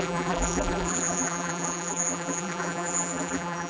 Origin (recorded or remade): remade